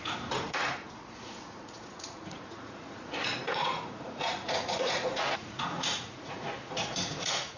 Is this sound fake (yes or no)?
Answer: yes